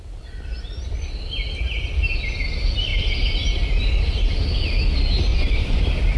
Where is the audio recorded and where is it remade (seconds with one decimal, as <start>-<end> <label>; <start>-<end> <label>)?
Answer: 0.0-5.3 recorded; 5.3-5.8 remade; 5.8-6.2 recorded